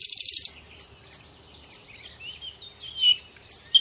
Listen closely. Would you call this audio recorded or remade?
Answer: recorded